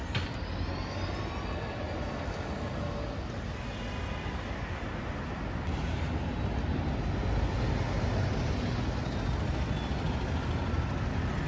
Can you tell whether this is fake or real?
real